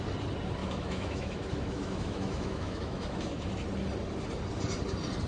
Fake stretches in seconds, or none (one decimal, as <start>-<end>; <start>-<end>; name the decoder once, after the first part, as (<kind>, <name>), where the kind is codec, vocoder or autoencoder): 0.6-3.5 (autoencoder, DAC-VAE)